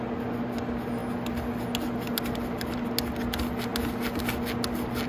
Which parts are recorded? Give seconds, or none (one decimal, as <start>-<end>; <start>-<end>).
0.0-5.1

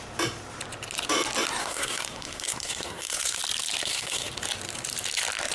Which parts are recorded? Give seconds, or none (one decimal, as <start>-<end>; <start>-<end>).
0.0-1.6; 3.4-3.8; 4.3-5.5

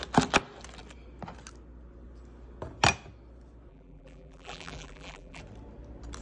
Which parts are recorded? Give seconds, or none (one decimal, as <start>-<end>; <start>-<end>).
0.0-3.7; 5.4-6.2

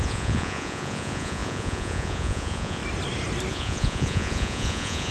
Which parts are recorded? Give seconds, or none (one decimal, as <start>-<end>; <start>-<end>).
2.8-3.5

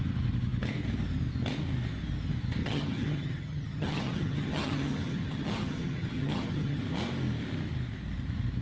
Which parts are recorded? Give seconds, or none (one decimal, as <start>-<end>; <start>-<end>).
0.0-2.6; 6.8-8.6